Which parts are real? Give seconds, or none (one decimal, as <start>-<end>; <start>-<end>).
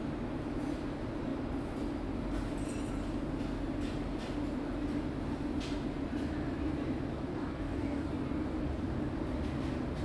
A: 0.0-7.3; 8.1-10.0